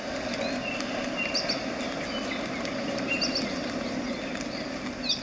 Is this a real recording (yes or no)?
yes